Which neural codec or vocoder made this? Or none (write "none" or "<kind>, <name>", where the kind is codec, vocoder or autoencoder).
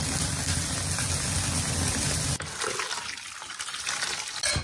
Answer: none